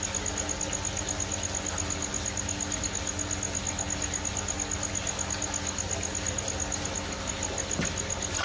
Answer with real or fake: real